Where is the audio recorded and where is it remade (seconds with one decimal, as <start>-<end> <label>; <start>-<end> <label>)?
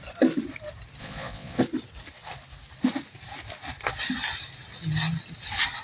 0.0-1.0 recorded; 1.0-1.6 remade; 1.6-5.8 recorded